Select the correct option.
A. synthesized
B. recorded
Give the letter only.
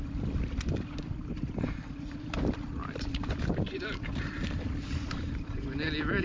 A